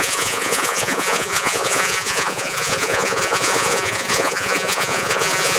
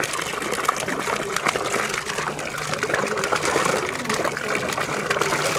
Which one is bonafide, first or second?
second